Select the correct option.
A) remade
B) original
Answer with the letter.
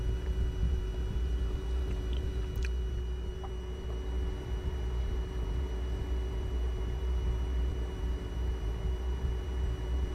A